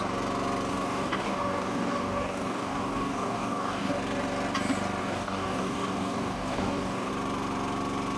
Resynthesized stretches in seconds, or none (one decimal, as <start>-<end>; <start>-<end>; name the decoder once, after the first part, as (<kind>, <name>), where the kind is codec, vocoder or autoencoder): 0.7-3.9 (codec, DAC); 5.0-7.1